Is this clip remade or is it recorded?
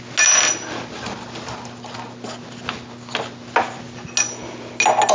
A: recorded